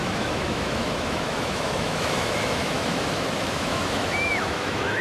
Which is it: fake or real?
fake